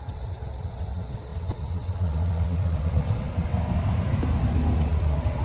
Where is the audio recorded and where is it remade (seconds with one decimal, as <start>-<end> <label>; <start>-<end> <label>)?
0.0-3.5 remade; 3.5-4.8 recorded; 4.8-5.4 remade